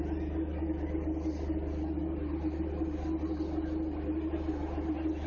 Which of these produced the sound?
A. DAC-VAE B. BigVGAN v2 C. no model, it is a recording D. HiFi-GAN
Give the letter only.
C